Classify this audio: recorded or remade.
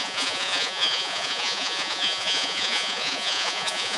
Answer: remade